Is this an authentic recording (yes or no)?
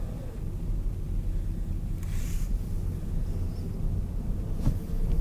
yes